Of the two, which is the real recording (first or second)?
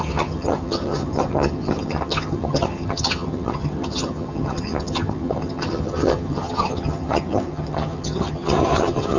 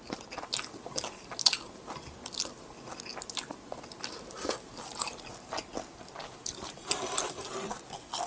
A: second